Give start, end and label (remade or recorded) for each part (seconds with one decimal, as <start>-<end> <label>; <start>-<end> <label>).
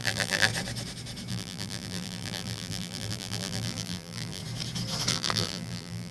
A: 0.0-0.5 remade; 0.5-1.3 recorded; 1.3-4.4 remade; 4.4-5.1 recorded; 5.1-6.1 remade